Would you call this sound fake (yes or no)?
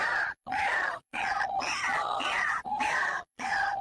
yes